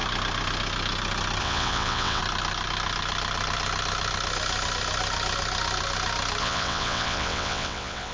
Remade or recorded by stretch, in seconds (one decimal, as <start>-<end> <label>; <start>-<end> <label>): 0.0-1.4 recorded; 1.4-2.2 remade; 2.2-6.4 recorded; 6.4-8.1 remade